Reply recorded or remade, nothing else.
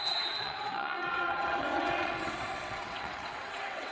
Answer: remade